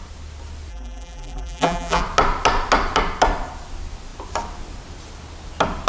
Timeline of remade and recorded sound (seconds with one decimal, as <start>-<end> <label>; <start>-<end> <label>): 0.0-0.7 recorded; 0.7-2.0 remade; 2.0-5.9 recorded